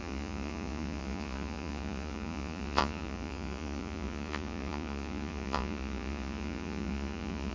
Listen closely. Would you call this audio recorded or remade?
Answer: remade